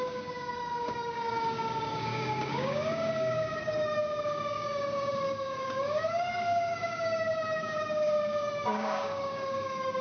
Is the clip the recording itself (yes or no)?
no